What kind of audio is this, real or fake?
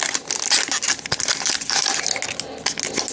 real